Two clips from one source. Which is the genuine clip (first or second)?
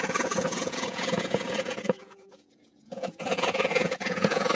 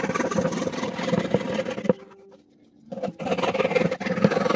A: second